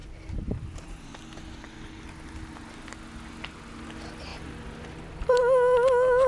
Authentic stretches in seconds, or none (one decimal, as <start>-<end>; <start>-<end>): 0.0-4.3; 5.4-6.3